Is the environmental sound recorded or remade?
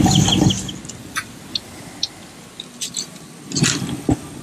recorded